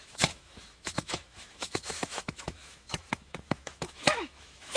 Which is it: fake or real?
fake